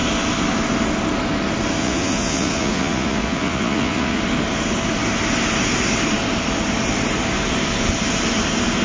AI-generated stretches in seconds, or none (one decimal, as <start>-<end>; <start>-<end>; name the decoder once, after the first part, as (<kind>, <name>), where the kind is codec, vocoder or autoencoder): 1.8-4.2 (vocoder, Vocos)